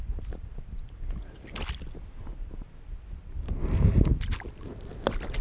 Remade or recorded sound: recorded